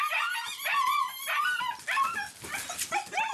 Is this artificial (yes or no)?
no